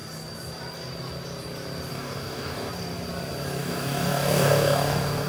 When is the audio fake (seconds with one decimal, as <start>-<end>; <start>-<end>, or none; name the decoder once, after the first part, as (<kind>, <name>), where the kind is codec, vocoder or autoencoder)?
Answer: 1.9-2.7 (codec, DAC); 3.6-5.3